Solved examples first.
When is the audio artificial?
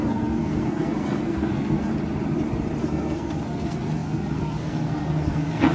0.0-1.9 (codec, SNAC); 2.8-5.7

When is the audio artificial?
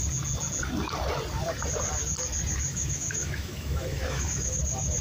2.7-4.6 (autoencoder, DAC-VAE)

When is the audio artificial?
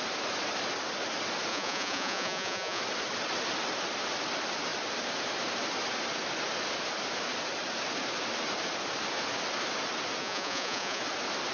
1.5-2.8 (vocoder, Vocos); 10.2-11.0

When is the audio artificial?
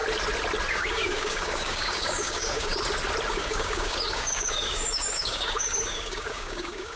0.7-2.7 (codec, DAC); 3.3-7.0